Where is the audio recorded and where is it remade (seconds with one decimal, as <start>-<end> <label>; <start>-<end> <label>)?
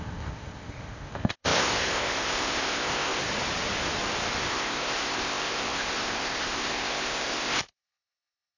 0.0-3.2 remade; 3.2-4.5 recorded; 4.5-8.6 remade